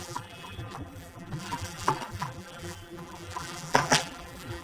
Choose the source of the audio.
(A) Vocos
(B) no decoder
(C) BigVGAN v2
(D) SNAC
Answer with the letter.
C